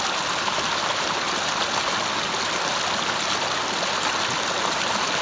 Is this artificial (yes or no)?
no